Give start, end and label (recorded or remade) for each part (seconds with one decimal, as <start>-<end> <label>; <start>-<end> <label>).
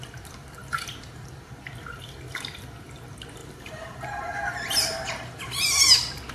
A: 0.0-3.4 recorded; 3.4-5.7 remade; 5.7-6.3 recorded